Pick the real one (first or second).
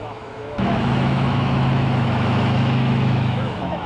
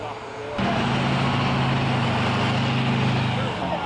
second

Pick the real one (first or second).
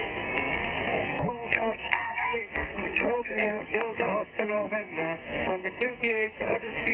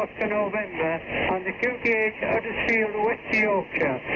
second